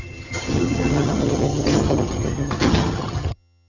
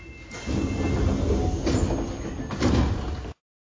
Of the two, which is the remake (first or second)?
first